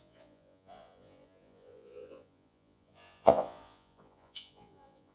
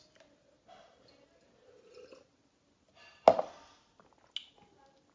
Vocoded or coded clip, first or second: first